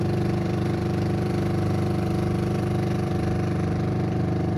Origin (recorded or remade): remade